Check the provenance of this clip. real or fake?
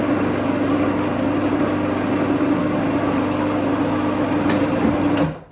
real